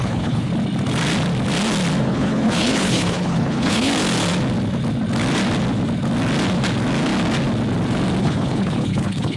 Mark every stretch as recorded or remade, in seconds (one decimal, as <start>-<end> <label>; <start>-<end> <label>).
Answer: 0.0-0.5 remade; 0.5-2.0 recorded; 2.0-3.9 remade; 3.9-8.2 recorded; 8.2-9.4 remade